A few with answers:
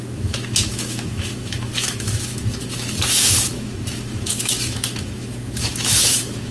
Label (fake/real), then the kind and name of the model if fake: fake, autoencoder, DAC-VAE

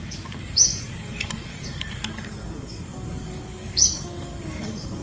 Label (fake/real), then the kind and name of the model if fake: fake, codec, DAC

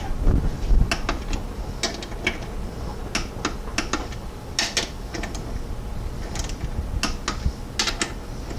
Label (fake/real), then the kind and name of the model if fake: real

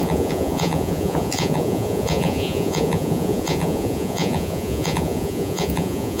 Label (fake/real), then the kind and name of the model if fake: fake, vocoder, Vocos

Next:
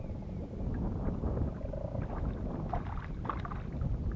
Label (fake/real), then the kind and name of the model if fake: real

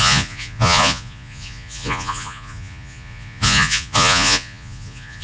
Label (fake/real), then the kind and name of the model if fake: fake, vocoder, Vocos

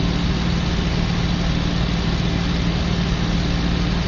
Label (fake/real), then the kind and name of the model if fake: real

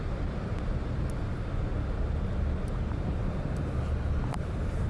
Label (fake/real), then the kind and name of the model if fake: real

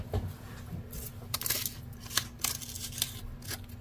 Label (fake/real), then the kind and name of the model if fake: real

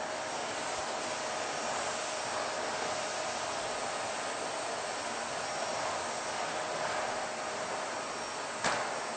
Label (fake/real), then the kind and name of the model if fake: real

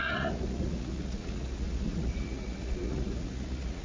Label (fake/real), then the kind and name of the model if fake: fake, vocoder, Vocos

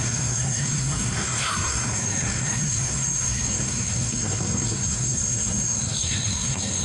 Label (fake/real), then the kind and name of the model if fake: fake, codec, SNAC